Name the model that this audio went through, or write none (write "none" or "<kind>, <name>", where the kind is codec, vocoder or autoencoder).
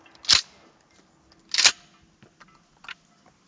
none